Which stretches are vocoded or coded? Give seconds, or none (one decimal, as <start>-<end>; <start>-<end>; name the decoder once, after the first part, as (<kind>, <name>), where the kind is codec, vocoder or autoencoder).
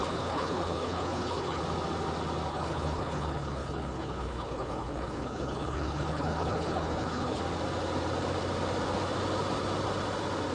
0.0-1.6 (codec, HILCodec); 2.5-7.4